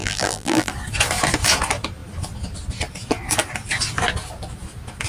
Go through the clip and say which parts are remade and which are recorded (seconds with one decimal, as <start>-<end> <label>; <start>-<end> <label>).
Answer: 0.0-0.7 remade; 0.7-5.1 recorded